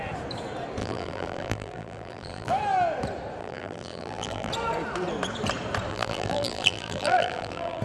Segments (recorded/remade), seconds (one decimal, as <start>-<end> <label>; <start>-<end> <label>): 0.0-0.8 recorded; 0.8-2.5 remade; 2.5-3.4 recorded; 3.4-4.5 remade; 4.5-5.9 recorded; 5.9-7.8 remade